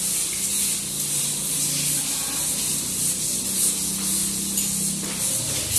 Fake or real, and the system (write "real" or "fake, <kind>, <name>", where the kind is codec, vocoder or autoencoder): real